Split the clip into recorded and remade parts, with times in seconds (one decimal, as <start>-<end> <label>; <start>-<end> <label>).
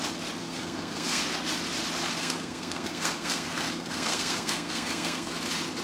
0.0-0.4 recorded; 0.4-1.2 remade; 1.2-2.2 recorded; 2.2-5.3 remade; 5.3-5.8 recorded